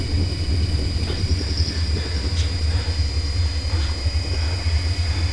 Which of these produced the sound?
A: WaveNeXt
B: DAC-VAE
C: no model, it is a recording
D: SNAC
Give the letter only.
C